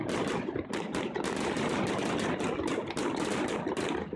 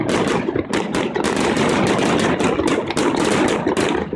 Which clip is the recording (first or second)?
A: second